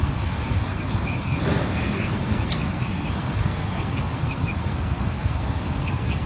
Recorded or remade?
remade